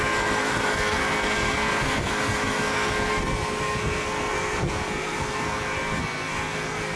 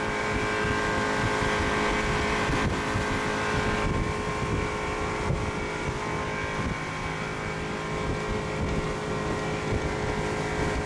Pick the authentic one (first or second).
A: second